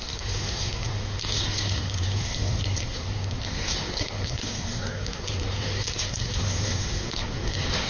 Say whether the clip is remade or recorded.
remade